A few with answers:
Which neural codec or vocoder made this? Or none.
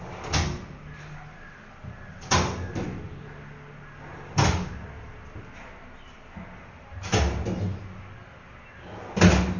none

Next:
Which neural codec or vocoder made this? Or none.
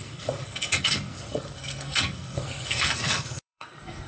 codec, SNAC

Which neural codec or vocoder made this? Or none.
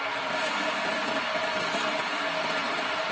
none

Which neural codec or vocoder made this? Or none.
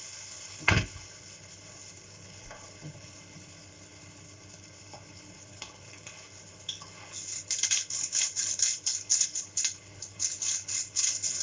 codec, HILCodec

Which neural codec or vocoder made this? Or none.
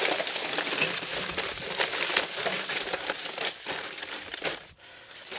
vocoder, BigVGAN v2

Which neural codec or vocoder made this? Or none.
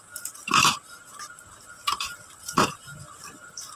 vocoder, BigVGAN v2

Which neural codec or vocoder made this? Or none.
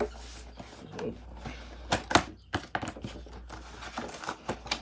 none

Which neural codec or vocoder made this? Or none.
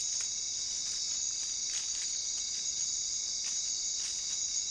none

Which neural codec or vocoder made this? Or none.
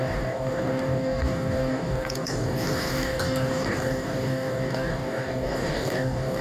codec, DAC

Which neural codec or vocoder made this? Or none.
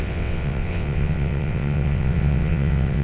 vocoder, WaveNeXt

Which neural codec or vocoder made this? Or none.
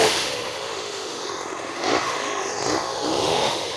autoencoder, DAC-VAE